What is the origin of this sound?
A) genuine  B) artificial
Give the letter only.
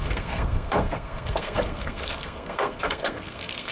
B